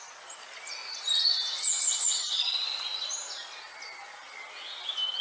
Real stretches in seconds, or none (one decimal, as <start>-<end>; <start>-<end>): 0.0-5.2